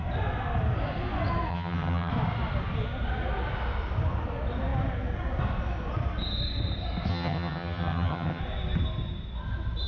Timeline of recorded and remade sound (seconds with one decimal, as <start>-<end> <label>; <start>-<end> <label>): 0.0-1.5 recorded; 1.5-2.1 remade; 2.1-7.1 recorded; 7.1-8.4 remade; 8.4-9.9 recorded